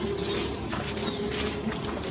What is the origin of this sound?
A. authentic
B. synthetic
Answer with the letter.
A